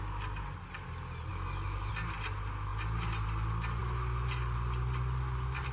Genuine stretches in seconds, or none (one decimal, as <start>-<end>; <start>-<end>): 0.0-1.3; 1.9-5.7